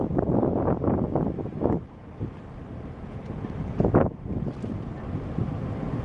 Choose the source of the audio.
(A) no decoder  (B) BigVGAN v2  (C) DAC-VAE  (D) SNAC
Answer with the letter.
A